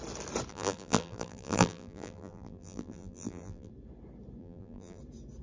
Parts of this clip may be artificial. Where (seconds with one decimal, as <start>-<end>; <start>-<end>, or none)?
0.5-3.7; 4.4-5.0